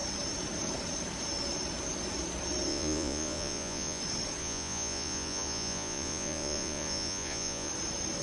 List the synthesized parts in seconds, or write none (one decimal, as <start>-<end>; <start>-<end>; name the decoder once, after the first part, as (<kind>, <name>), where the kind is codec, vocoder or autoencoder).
2.7-4.0 (vocoder, Vocos); 4.4-7.7